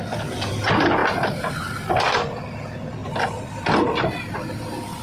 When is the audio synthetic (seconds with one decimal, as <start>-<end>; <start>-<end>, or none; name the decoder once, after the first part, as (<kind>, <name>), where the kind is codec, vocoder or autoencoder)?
none